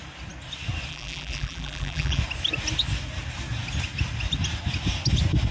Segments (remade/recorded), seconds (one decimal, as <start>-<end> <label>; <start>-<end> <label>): 0.0-0.9 recorded; 0.9-2.2 remade; 2.2-5.5 recorded